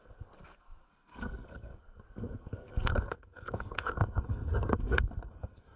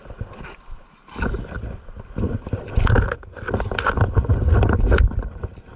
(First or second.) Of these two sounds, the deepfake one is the first